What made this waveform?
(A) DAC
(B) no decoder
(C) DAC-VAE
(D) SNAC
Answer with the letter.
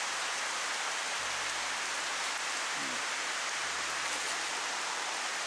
B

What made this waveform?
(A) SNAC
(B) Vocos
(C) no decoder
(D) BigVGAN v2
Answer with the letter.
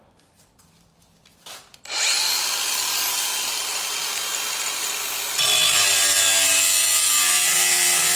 D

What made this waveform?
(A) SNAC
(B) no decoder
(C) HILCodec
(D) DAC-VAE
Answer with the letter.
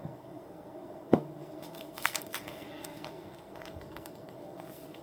A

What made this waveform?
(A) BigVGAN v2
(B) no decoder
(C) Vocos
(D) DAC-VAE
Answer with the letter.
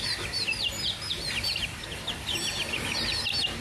B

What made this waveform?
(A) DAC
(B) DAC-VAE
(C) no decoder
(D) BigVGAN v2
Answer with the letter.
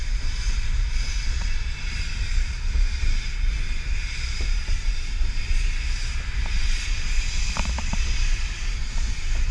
D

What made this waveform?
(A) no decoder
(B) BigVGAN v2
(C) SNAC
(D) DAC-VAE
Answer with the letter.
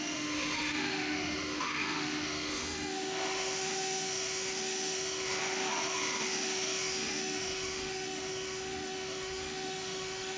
D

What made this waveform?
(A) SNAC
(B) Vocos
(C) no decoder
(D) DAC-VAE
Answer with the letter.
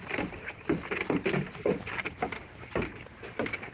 C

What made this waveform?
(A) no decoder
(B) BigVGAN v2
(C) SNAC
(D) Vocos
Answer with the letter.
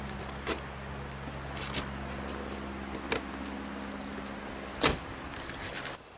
A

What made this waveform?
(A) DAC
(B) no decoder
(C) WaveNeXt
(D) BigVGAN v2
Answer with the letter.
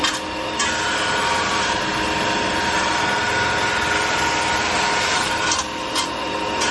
B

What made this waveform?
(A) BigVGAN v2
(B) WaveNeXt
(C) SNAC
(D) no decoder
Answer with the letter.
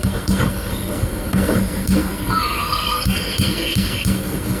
C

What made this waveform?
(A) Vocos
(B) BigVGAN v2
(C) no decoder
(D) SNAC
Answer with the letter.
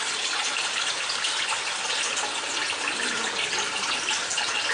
C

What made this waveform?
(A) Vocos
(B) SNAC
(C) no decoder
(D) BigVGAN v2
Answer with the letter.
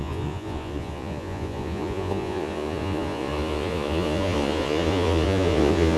A